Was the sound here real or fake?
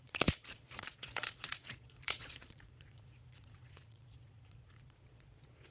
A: fake